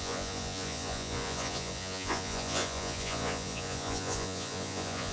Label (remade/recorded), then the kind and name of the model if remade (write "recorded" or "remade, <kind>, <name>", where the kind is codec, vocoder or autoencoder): remade, vocoder, Vocos